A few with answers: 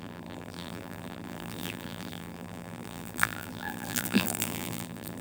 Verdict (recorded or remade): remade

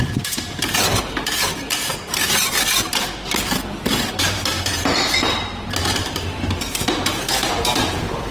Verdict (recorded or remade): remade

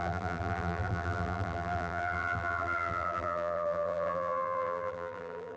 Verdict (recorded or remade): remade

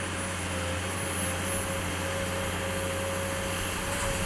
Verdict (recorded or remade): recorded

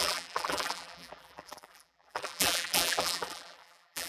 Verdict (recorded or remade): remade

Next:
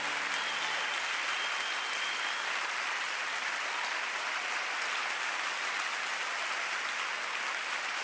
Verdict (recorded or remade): recorded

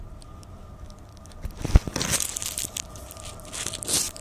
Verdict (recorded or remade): recorded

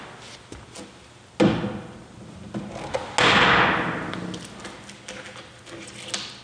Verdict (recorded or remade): recorded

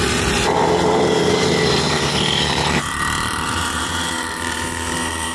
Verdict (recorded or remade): remade